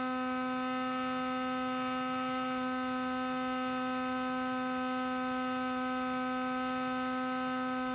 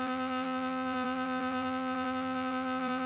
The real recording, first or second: first